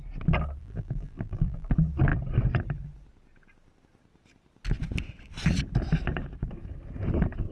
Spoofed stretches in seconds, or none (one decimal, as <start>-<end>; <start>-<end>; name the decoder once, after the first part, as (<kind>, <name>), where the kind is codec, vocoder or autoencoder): 0.6-1.7 (vocoder, BigVGAN v2)